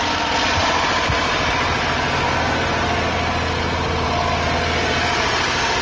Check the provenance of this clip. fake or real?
real